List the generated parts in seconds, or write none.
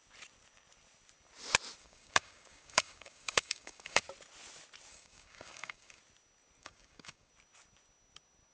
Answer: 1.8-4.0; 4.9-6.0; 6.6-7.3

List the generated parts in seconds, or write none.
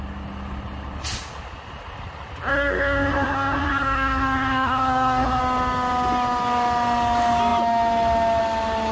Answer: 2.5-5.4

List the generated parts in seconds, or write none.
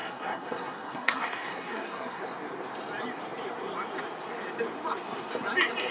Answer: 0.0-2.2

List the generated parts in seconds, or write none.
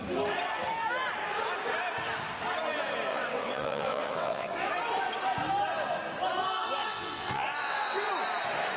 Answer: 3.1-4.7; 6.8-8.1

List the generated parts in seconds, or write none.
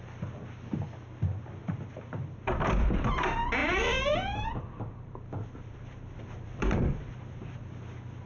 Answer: 1.6-3.1; 3.6-7.6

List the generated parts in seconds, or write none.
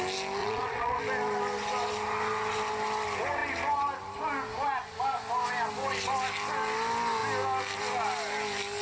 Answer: 0.4-1.0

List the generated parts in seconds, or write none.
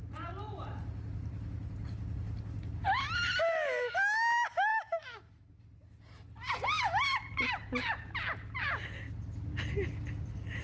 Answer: 4.7-5.6